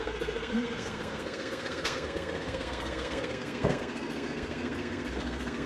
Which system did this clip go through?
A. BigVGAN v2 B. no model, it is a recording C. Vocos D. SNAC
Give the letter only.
D